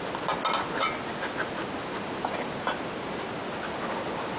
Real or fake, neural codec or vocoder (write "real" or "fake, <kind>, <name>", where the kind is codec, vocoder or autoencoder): real